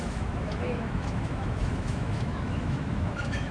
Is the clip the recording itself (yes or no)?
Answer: no